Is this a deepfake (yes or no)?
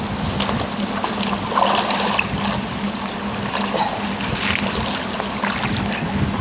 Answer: no